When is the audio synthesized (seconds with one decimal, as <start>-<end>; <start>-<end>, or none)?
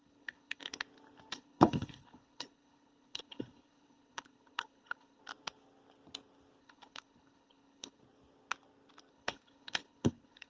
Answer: 0.0-0.7; 1.3-5.2; 6.6-8.0; 9.1-10.5